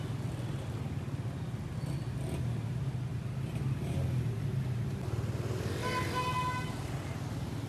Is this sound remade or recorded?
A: recorded